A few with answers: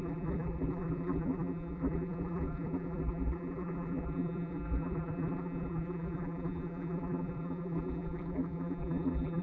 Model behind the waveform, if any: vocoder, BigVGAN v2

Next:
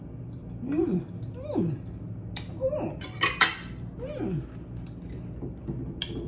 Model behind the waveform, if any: none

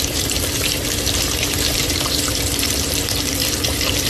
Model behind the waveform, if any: vocoder, BigVGAN v2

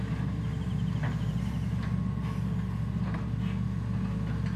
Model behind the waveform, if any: none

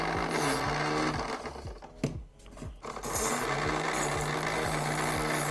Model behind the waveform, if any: none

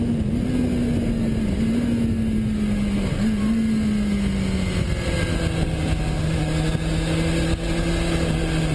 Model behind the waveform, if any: none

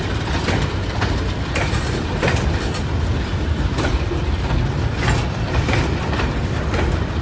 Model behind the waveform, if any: vocoder, BigVGAN v2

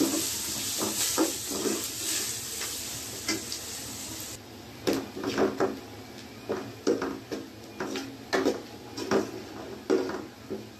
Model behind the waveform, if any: none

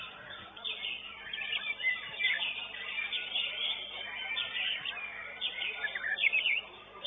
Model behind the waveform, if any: vocoder, BigVGAN v2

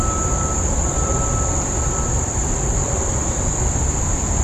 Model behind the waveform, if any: vocoder, BigVGAN v2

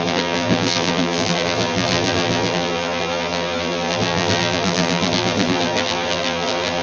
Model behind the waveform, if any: vocoder, BigVGAN v2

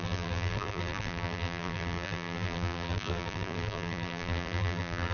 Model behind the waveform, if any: vocoder, BigVGAN v2